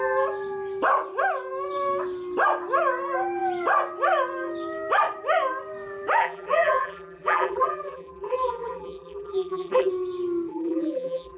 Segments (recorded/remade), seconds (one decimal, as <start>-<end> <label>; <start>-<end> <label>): 0.0-6.2 recorded; 6.2-9.9 remade; 9.9-10.5 recorded; 10.5-11.4 remade